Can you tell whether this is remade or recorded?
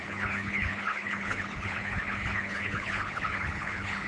remade